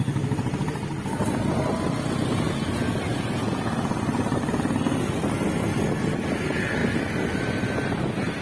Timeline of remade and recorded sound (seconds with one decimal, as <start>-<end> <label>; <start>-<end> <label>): 0.0-3.1 recorded; 3.1-3.7 remade; 3.7-8.4 recorded